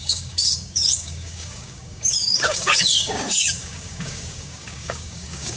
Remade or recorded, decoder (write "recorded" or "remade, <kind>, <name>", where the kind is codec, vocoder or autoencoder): remade, codec, DAC